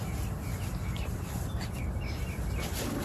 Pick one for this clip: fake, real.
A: real